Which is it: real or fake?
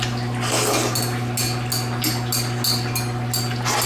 real